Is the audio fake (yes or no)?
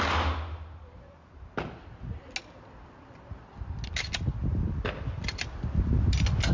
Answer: no